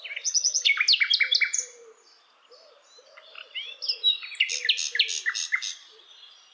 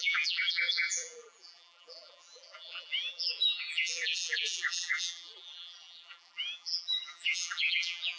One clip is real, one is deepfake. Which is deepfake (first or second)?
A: second